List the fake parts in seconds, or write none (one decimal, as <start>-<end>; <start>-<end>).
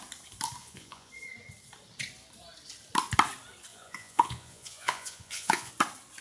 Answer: 0.6-1.1; 3.7-5.7